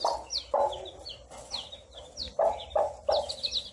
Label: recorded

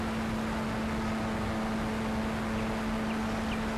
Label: recorded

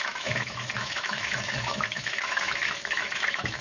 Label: remade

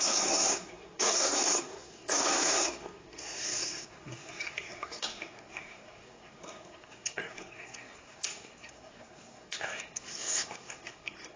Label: remade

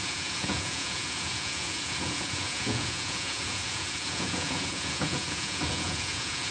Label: remade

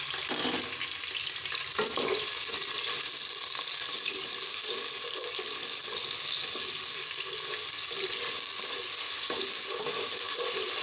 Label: recorded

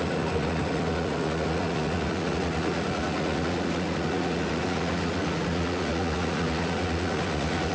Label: remade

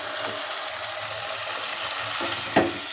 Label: recorded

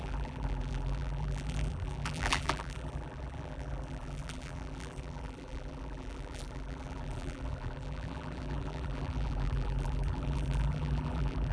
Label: remade